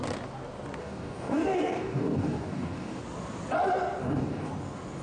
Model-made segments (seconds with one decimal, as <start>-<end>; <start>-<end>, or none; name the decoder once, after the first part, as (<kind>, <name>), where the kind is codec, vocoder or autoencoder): 0.8-3.0 (codec, DAC); 4.0-4.5